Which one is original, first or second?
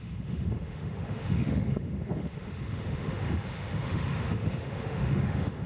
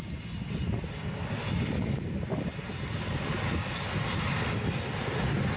second